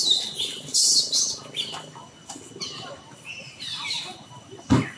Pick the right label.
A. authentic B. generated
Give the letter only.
A